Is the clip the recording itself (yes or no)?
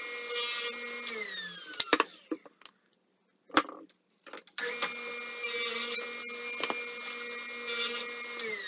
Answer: yes